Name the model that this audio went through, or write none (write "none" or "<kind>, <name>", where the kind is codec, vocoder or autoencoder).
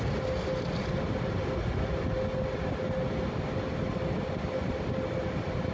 none